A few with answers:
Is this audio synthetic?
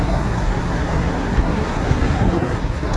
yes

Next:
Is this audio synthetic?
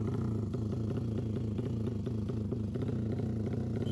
no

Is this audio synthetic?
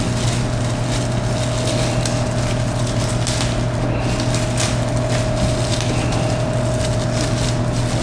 no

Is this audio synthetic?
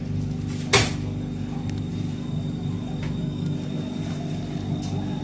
no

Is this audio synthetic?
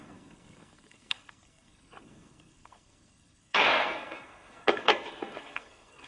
yes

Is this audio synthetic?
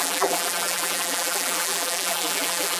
yes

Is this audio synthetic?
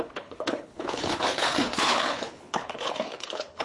yes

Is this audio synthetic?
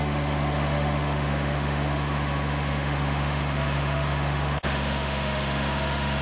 yes